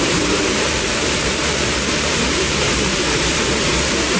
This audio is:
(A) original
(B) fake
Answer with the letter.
B